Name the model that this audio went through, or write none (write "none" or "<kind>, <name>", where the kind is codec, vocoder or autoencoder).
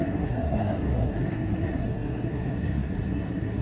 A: codec, SNAC